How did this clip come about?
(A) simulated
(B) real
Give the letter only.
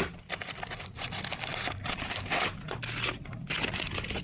B